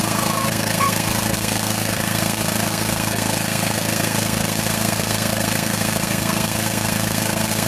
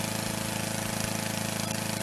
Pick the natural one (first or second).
second